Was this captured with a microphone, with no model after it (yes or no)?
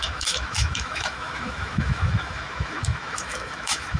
no